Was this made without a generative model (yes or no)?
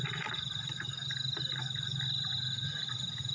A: yes